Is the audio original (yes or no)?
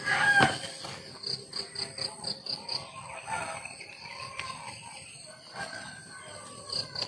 yes